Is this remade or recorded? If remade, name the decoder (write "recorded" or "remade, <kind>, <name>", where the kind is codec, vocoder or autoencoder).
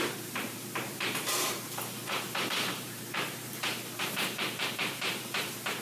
remade, vocoder, BigVGAN v2